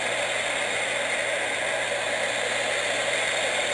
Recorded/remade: recorded